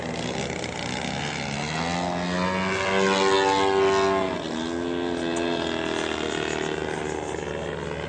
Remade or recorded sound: recorded